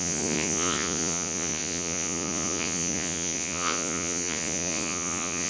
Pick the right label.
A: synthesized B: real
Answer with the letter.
A